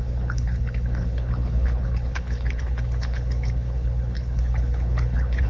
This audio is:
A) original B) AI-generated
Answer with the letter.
B